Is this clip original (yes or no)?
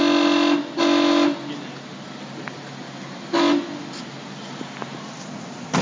yes